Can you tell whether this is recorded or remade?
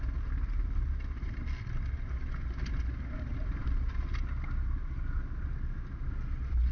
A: recorded